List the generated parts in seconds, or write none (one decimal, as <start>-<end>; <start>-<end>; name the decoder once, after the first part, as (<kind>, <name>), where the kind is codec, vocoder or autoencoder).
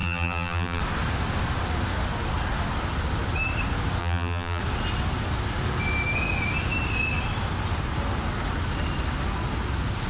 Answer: 0.0-0.8 (vocoder, BigVGAN v2); 4.0-4.6